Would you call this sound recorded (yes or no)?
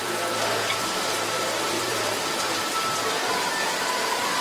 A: no